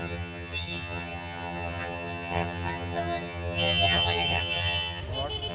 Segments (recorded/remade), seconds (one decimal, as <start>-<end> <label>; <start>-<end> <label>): 0.0-5.0 remade; 5.0-5.5 recorded